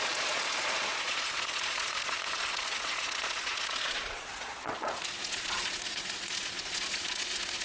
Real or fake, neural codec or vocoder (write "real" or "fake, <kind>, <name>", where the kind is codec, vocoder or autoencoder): fake, vocoder, Vocos